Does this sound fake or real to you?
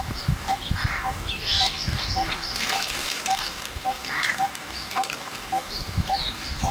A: fake